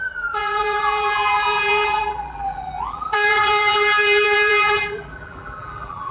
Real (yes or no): no